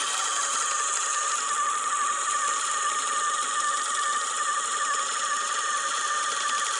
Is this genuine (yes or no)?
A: yes